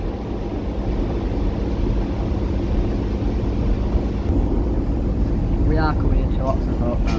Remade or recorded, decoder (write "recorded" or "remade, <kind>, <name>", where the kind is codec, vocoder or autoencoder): recorded